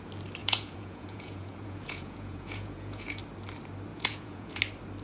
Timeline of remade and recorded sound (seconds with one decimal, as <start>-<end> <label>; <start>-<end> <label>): 0.0-0.4 recorded; 0.4-3.2 remade; 3.2-3.9 recorded; 3.9-4.6 remade; 4.6-5.0 recorded